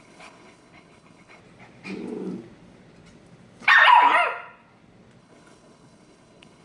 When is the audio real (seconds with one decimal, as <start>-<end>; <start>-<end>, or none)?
1.4-5.2